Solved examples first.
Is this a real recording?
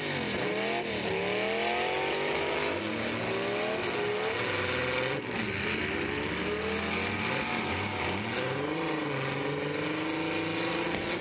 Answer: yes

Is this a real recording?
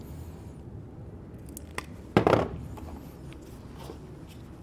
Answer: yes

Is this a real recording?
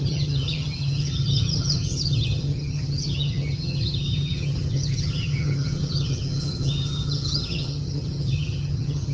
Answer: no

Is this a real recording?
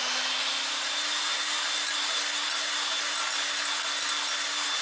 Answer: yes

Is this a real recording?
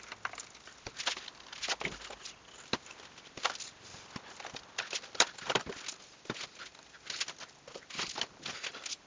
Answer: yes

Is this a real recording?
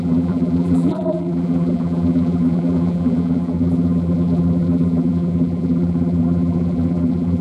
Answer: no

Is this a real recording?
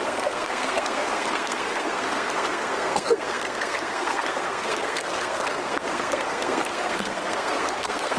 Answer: no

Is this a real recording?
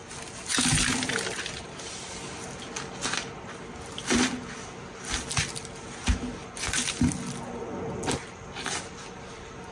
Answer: yes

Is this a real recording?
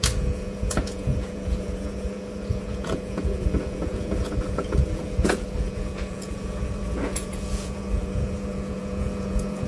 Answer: no